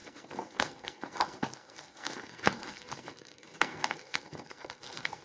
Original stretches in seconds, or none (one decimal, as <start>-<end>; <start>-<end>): none